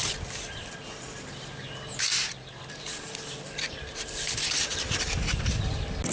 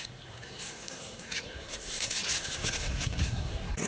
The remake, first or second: second